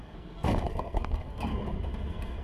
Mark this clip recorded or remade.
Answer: remade